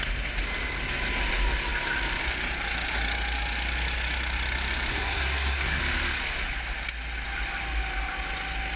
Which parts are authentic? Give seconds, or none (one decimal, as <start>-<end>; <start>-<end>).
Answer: 0.0-4.9; 5.8-8.8

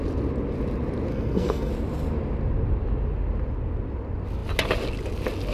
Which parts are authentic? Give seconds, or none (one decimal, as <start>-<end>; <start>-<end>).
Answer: 0.0-1.1; 1.7-5.5

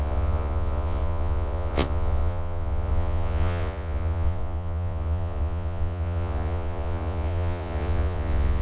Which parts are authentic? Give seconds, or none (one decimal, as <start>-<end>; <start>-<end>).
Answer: none

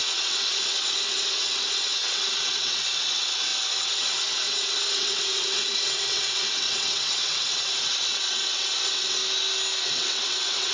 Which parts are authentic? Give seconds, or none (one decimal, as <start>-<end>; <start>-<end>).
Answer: 9.2-9.8

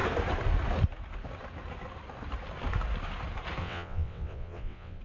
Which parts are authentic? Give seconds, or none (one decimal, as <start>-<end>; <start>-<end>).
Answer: 0.0-3.6